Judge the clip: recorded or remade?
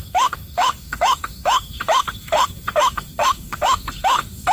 remade